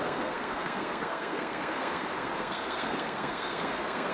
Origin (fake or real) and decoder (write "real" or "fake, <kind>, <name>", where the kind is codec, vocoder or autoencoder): fake, codec, SNAC